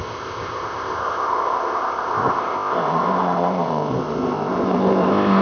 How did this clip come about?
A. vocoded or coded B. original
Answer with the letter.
A